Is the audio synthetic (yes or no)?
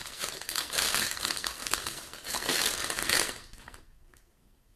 yes